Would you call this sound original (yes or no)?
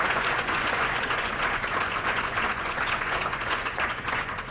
no